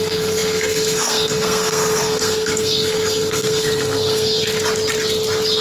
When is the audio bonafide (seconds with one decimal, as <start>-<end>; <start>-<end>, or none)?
4.4-5.6